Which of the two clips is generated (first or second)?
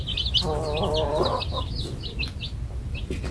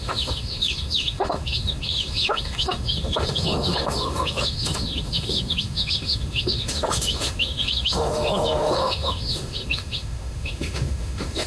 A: second